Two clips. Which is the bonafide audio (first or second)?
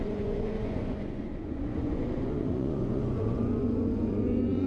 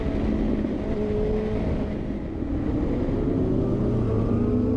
second